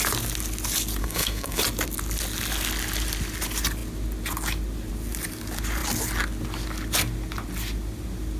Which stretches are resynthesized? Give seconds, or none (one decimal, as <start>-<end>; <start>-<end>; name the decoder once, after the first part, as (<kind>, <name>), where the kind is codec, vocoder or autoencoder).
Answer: 1.0-1.6 (codec, SNAC)